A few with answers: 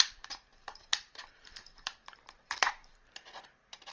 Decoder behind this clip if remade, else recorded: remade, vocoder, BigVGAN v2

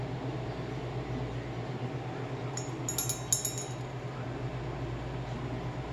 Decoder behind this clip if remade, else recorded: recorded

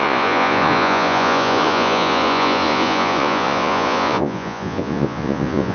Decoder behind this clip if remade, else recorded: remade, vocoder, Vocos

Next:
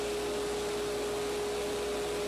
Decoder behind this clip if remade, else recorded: recorded